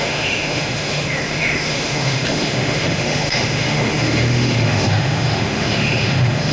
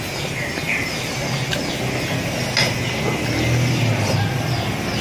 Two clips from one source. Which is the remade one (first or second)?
first